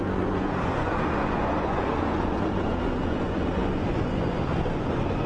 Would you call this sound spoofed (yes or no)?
yes